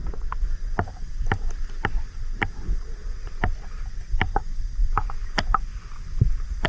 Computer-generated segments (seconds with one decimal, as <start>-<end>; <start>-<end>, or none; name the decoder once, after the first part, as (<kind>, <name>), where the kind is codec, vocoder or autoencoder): none

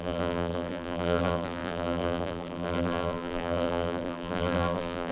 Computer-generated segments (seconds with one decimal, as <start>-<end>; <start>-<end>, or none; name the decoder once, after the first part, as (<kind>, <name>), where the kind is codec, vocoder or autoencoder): 0.0-5.1 (vocoder, BigVGAN v2)

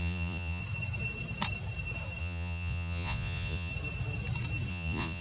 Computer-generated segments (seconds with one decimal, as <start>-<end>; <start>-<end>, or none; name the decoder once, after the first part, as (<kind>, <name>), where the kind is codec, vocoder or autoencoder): 0.0-0.6 (vocoder, Vocos); 2.2-3.7; 4.7-5.2